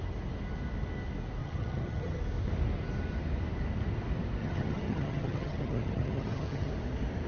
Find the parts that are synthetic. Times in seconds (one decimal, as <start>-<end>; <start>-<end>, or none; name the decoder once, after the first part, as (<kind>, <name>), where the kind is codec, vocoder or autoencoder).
1.4-2.2 (vocoder, HiFi-GAN); 4.4-6.7